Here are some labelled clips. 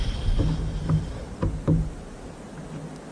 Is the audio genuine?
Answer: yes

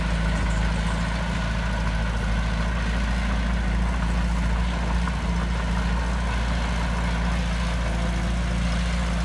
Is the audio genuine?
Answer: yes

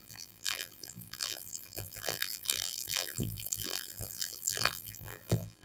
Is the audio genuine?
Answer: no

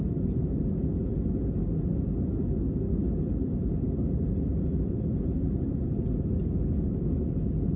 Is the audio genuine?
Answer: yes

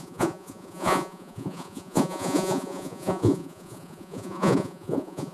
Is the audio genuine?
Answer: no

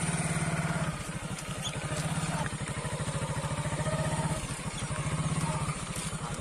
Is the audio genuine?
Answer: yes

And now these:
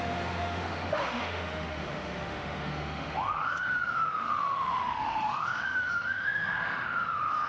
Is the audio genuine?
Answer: no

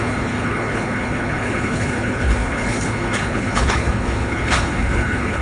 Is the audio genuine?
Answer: no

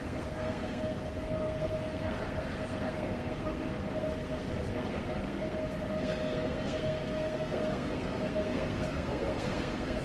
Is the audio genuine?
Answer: no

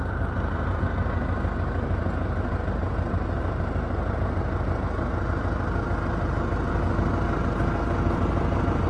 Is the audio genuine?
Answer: yes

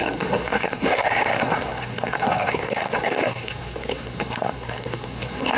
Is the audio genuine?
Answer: no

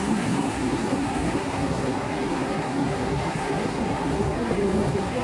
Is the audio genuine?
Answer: no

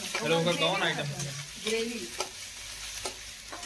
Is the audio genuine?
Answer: yes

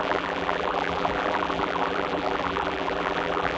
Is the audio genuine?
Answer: no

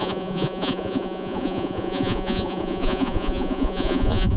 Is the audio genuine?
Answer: no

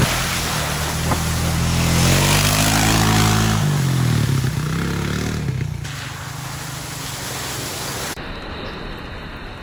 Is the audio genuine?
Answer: yes